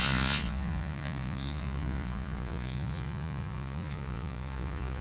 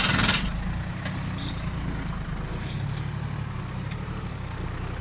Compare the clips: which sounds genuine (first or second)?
second